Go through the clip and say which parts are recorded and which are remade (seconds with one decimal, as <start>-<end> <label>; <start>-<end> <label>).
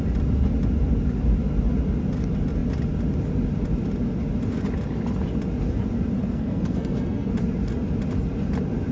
0.0-6.2 recorded; 6.2-7.3 remade; 7.3-8.9 recorded